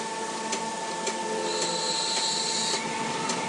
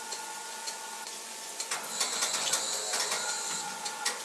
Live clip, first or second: first